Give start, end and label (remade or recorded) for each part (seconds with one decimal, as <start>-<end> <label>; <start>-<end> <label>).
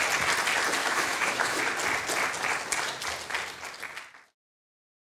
0.0-0.8 recorded; 0.8-1.6 remade; 1.6-5.0 recorded